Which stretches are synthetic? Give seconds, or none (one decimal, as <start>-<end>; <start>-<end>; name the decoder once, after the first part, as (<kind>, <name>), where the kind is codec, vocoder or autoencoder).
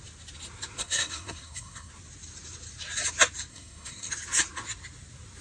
0.8-1.9 (codec, SNAC); 3.5-4.1